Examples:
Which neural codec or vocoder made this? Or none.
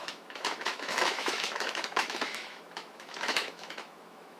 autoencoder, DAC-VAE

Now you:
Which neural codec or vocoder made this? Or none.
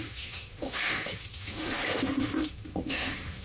autoencoder, DAC-VAE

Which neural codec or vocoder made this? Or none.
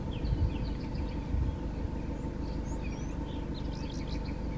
none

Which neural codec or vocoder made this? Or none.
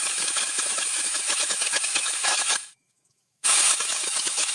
autoencoder, DAC-VAE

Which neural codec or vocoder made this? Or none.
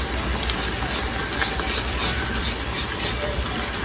none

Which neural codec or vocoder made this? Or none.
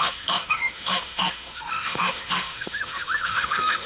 autoencoder, DAC-VAE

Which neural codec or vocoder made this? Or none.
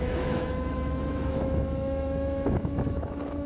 autoencoder, DAC-VAE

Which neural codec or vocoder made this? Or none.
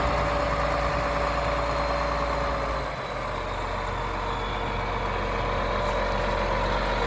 none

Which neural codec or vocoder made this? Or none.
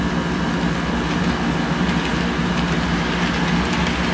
none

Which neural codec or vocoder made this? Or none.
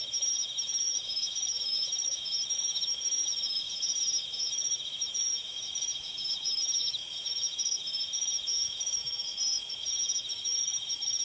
autoencoder, DAC-VAE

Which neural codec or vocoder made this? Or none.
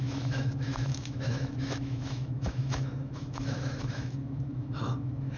autoencoder, DAC-VAE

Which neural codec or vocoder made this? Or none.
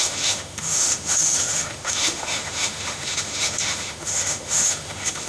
autoencoder, DAC-VAE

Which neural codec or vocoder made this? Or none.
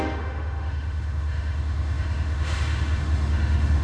autoencoder, DAC-VAE